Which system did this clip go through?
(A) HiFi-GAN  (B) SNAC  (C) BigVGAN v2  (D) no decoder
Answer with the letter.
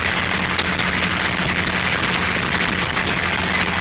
D